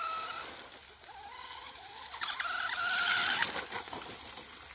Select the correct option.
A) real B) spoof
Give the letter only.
A